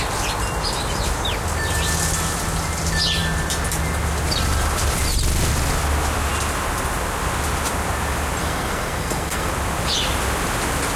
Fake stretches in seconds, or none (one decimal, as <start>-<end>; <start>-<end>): 8.4-9.5